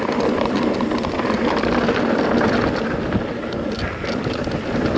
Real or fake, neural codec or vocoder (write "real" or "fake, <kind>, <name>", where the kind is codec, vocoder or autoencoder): real